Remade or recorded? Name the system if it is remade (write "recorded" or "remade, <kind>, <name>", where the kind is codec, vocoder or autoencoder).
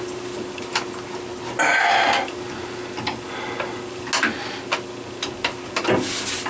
recorded